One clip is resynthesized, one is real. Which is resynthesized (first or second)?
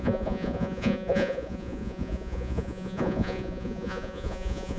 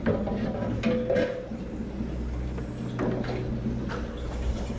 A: first